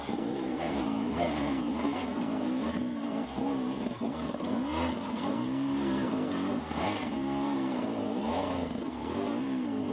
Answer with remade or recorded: remade